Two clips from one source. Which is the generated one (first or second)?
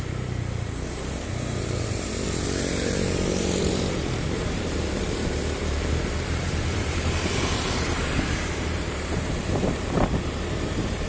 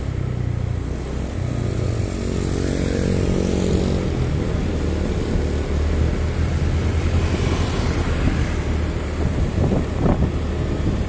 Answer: first